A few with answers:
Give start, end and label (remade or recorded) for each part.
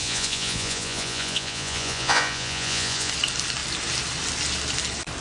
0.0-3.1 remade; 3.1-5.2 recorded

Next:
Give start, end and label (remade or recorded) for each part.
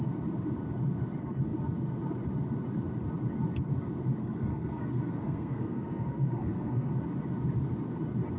0.0-4.2 recorded; 4.2-6.9 remade; 6.9-8.4 recorded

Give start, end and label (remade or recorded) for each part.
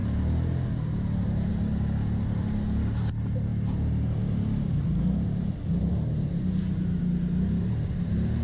0.0-8.4 recorded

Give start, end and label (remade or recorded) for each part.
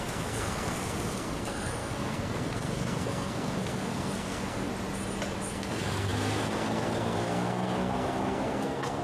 0.0-4.7 remade; 4.7-5.5 recorded; 5.5-9.0 remade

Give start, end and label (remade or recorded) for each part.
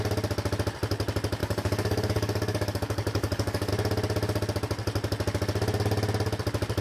0.0-1.4 recorded; 1.4-3.7 remade; 3.7-6.8 recorded